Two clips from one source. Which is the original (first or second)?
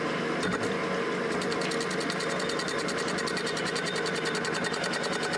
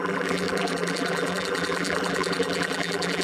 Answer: first